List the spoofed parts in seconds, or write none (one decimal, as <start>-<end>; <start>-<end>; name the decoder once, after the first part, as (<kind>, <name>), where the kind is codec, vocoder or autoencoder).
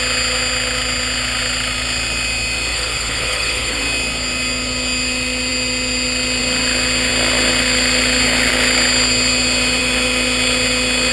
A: 2.7-3.8 (codec, HILCodec)